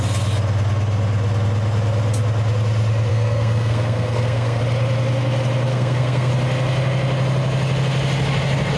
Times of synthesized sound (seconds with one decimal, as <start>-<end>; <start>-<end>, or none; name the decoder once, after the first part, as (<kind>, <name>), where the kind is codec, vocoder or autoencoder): 3.1-4.6 (codec, SNAC); 5.7-6.3